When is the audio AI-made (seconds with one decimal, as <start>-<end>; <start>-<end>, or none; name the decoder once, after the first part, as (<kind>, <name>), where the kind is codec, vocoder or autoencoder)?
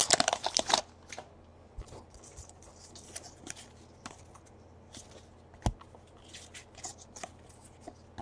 none